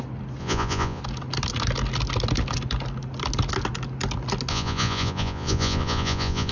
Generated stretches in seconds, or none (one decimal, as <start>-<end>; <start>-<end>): 0.4-1.0; 4.5-6.5